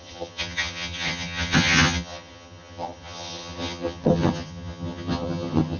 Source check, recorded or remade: remade